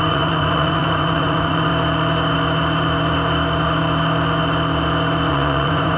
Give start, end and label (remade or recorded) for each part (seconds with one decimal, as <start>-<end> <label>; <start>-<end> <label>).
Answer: 0.0-1.7 remade; 1.7-5.3 recorded; 5.3-6.0 remade